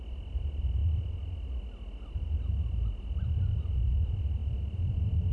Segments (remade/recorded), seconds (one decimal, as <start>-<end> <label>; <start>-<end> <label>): 0.0-5.3 recorded